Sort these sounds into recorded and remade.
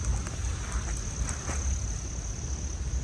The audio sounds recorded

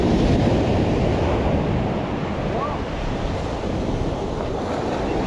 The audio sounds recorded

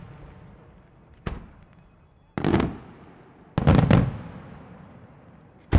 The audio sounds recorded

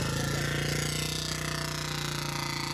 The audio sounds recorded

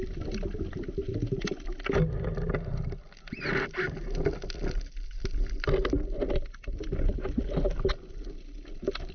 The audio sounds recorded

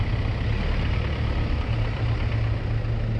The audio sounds recorded